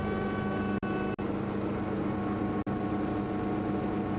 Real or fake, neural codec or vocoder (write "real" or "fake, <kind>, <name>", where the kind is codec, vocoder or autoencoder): real